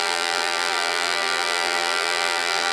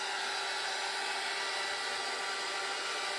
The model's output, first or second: first